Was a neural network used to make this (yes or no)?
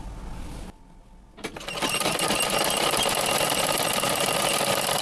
no